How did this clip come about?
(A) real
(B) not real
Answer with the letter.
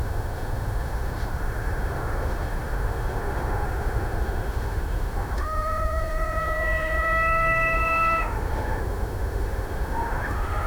B